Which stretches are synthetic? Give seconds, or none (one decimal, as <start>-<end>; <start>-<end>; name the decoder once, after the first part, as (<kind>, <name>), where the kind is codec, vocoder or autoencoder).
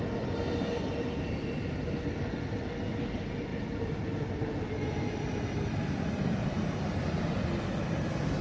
3.5-4.7 (vocoder, BigVGAN v2); 6.4-7.2